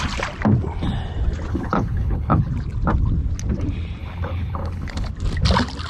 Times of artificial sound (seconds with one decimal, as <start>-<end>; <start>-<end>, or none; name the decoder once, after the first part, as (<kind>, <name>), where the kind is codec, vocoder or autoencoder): 1.5-2.5 (codec, HILCodec); 4.0-5.1